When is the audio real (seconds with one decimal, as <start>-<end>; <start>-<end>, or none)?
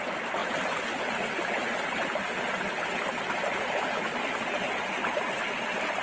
0.0-6.0